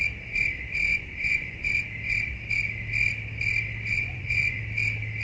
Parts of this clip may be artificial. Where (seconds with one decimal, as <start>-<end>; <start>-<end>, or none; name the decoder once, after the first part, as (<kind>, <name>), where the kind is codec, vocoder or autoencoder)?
0.9-1.7 (vocoder, Vocos); 3.9-4.6